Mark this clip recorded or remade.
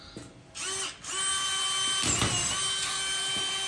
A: recorded